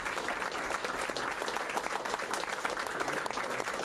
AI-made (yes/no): no